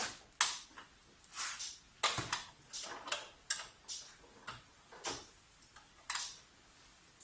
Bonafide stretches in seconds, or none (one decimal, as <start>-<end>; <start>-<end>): 0.0-7.2